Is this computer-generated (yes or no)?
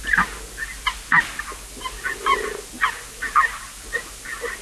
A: no